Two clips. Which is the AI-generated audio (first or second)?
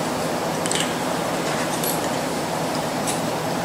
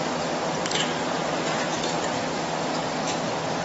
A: first